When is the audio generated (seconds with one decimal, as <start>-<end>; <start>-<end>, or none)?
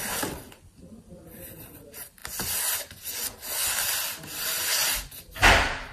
none